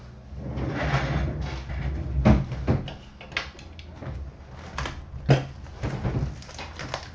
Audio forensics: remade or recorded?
recorded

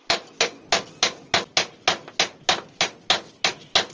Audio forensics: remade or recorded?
recorded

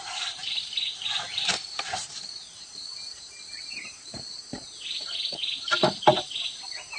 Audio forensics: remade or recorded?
remade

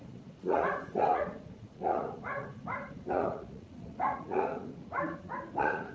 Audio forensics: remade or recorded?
remade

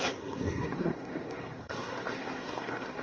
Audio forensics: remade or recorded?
remade